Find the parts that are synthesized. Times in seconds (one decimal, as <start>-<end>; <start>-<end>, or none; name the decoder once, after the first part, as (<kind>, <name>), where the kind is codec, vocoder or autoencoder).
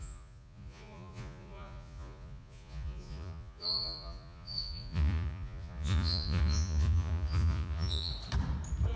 0.0-8.1 (vocoder, Vocos)